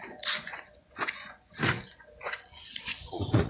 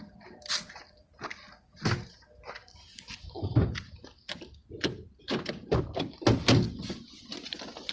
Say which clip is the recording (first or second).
second